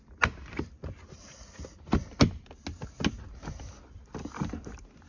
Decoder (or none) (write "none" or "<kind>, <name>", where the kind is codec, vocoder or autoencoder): none